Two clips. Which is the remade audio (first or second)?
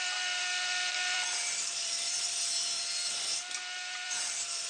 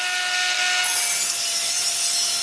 first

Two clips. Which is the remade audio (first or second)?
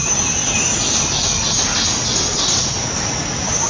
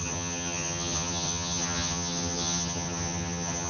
second